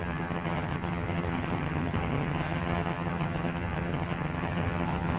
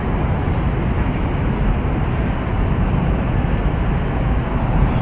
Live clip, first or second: second